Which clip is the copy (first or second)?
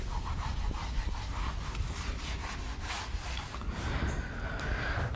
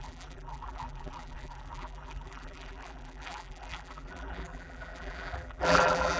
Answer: second